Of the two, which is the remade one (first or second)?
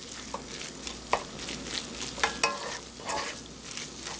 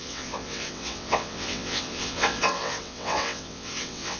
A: second